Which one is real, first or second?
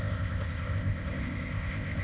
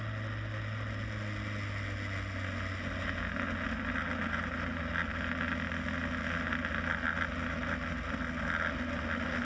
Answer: second